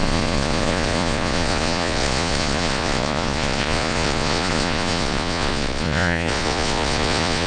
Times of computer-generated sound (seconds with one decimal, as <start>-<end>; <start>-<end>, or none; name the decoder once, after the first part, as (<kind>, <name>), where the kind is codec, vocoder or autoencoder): 0.0-7.5 (vocoder, Vocos)